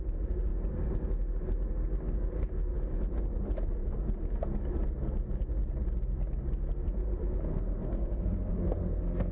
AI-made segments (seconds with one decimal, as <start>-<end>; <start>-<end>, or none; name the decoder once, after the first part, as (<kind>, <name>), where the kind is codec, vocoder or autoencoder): 7.5-9.3 (codec, SNAC)